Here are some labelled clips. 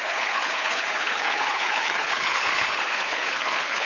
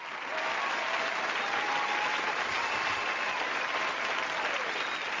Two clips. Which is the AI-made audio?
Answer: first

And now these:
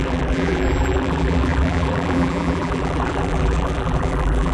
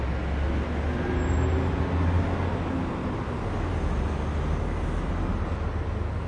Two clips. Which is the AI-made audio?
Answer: first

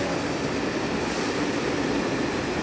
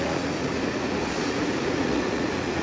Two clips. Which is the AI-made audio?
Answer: second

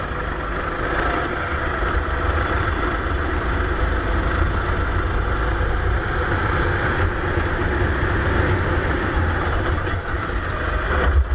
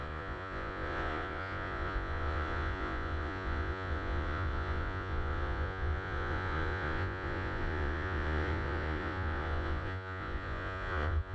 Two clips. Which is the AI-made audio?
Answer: second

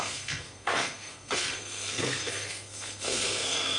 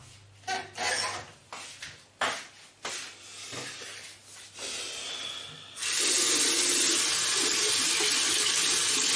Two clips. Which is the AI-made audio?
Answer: first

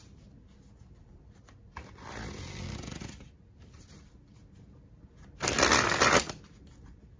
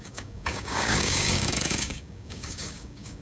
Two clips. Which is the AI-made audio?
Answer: second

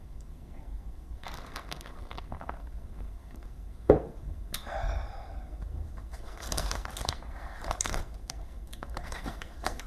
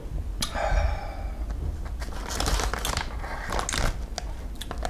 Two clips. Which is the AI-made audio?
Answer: first